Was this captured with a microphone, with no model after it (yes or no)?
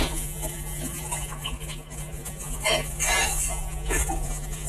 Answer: no